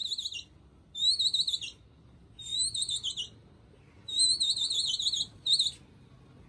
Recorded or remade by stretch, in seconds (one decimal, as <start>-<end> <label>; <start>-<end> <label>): 0.0-6.5 recorded